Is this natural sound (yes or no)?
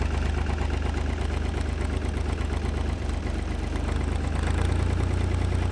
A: yes